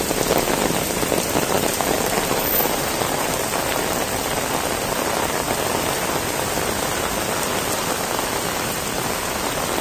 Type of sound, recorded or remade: recorded